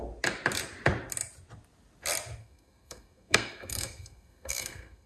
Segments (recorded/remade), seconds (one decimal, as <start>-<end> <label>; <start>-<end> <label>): 0.0-2.4 recorded; 2.4-5.1 remade